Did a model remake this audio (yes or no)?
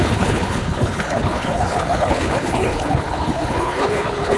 yes